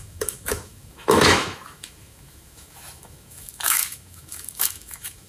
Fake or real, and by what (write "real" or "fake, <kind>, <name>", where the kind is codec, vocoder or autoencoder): fake, autoencoder, DAC-VAE